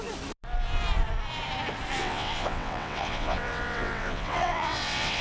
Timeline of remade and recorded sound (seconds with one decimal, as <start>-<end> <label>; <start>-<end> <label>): 0.0-2.0 recorded; 2.0-5.2 remade